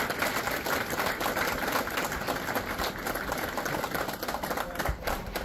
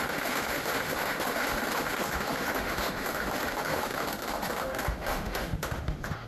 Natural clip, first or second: first